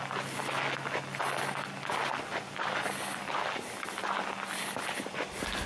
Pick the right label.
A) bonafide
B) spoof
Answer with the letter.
A